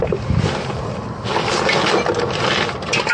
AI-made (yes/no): no